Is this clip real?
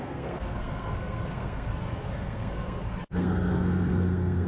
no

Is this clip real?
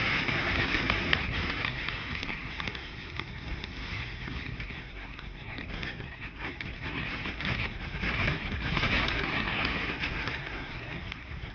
no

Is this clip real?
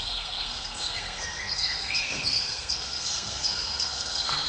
no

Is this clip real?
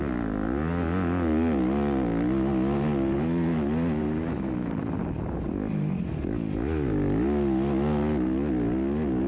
yes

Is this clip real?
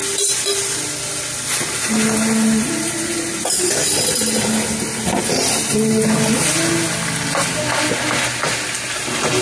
yes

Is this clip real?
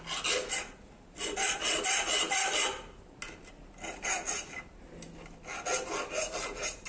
yes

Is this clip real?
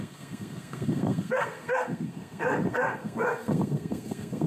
no